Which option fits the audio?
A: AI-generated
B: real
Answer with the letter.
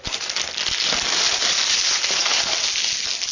B